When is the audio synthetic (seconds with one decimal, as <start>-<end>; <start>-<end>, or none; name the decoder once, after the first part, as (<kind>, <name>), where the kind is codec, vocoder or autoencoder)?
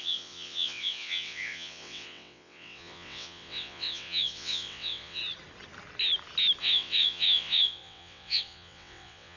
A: 0.0-5.2 (vocoder, WaveNeXt); 6.6-9.4